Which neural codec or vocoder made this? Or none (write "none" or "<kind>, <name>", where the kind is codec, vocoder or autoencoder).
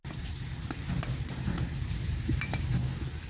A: none